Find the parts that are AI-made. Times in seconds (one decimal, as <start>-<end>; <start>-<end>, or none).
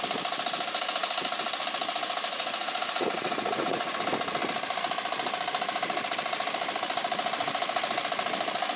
2.3-4.0